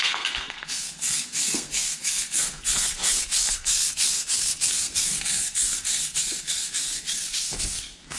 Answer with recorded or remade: remade